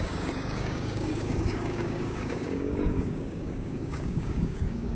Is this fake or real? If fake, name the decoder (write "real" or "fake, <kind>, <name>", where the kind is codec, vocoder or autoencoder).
fake, codec, DAC